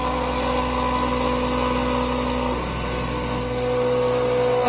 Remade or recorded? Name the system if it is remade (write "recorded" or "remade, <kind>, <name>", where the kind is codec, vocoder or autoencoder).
recorded